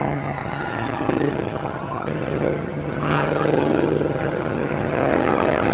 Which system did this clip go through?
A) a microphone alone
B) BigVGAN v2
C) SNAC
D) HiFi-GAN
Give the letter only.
D